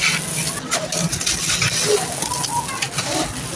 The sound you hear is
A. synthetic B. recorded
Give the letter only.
B